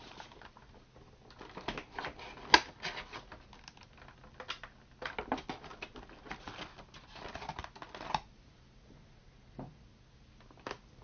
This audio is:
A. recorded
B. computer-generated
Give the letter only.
A